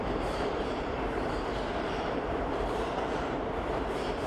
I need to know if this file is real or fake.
fake